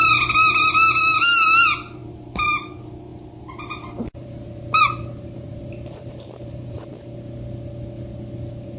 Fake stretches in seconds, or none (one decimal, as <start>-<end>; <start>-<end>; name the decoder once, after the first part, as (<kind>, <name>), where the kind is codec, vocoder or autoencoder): 2.0-2.7 (vocoder, BigVGAN v2); 3.1-6.9